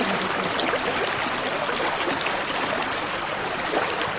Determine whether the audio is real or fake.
real